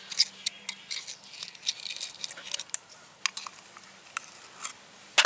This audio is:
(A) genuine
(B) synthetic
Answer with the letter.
A